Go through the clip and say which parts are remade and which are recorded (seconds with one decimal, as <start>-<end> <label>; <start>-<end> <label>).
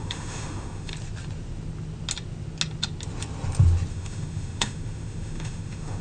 0.0-0.9 remade; 0.9-3.9 recorded; 3.9-6.0 remade